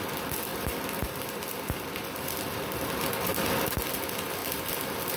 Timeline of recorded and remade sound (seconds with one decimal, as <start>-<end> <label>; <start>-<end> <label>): 0.0-0.5 recorded; 0.5-3.6 remade; 3.6-4.4 recorded; 4.4-5.2 remade